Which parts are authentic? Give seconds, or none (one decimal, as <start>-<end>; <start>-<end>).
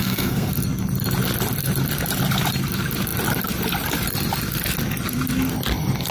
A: 0.5-6.1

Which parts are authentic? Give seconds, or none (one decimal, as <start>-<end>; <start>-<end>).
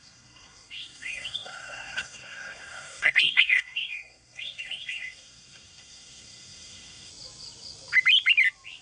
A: 7.1-8.8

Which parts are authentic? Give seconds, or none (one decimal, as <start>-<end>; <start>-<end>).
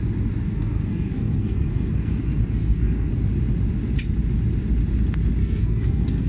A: 0.0-0.4; 3.1-5.4